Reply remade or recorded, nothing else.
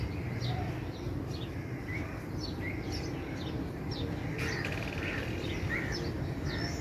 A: recorded